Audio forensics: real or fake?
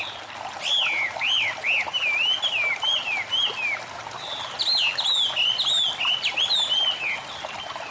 real